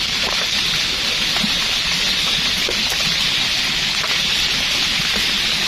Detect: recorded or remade recorded